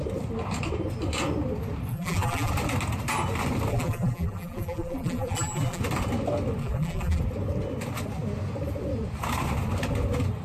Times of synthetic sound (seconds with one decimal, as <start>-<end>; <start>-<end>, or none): 1.9-2.5; 3.7-5.8; 6.6-7.2